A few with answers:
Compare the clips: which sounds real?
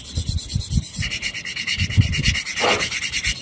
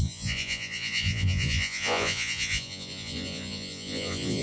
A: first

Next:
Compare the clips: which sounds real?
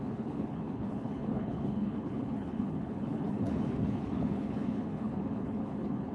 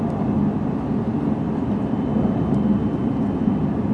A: second